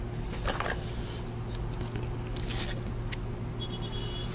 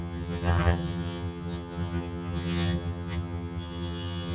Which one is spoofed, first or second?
second